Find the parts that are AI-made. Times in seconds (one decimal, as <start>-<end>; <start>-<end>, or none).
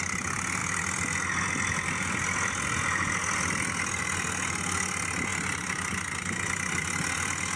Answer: none